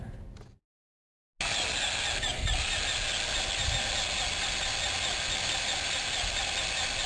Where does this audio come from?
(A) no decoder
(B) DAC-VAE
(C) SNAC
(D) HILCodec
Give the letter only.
A